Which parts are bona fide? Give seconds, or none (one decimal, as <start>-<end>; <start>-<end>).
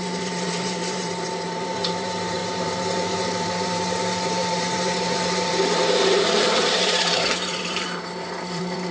none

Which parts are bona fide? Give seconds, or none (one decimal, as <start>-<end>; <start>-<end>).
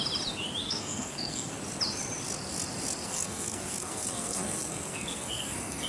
0.0-0.6; 1.6-3.0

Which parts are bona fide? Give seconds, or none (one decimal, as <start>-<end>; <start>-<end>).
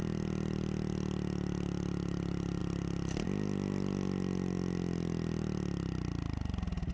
0.0-6.9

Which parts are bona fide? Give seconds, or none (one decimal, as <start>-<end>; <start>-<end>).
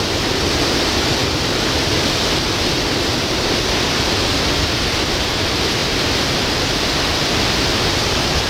0.0-8.5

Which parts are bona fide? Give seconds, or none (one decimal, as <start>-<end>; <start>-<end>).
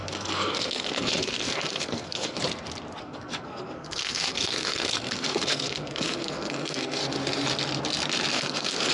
2.4-3.0; 7.0-8.3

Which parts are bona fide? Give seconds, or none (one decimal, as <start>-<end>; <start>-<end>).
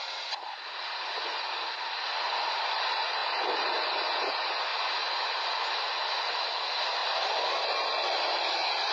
0.0-4.7; 5.8-8.9